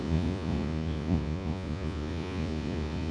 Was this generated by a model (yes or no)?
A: yes